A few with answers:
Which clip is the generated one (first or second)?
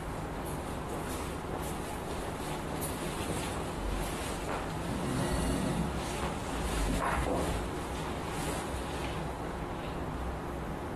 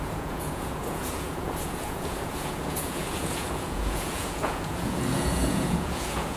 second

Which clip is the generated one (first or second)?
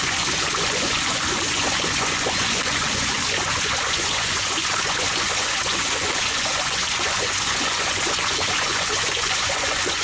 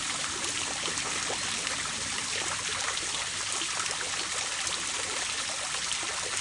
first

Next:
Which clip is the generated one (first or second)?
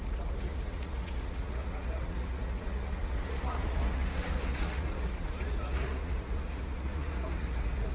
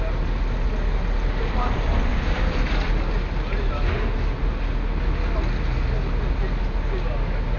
first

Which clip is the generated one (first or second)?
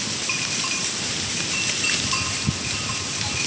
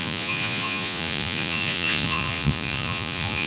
second